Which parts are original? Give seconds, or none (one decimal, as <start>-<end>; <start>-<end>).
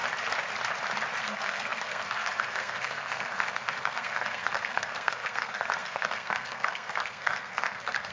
0.0-1.2